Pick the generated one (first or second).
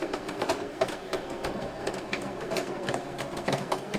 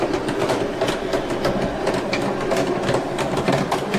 first